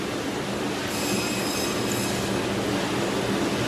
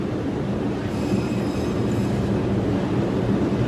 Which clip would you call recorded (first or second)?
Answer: first